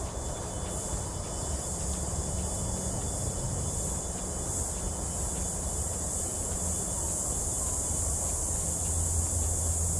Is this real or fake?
real